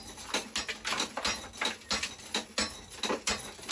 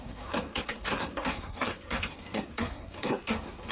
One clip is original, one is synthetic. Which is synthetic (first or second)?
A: second